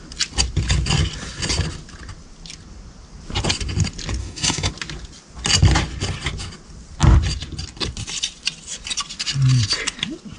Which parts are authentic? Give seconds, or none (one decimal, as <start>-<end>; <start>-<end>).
0.0-4.2; 4.7-10.4